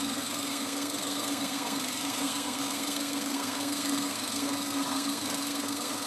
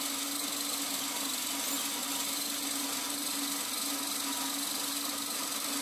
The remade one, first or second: first